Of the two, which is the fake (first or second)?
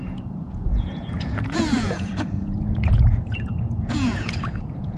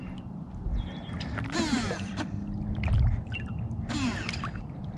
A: first